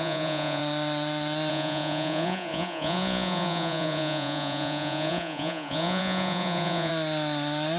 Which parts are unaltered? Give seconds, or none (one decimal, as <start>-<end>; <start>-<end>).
0.6-1.5; 6.9-7.8